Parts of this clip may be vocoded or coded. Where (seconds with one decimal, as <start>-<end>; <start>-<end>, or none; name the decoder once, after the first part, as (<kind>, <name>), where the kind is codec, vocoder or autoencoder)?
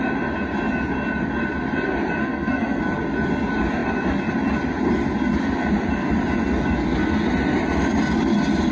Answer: 2.2-2.8 (codec, SNAC)